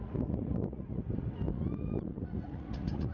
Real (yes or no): no